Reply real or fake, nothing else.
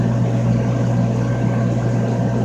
real